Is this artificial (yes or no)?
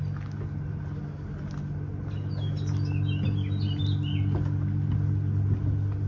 no